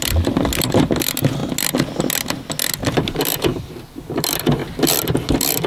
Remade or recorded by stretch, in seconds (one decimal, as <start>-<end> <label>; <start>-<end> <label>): 0.0-1.4 remade; 1.4-3.0 recorded; 3.0-5.7 remade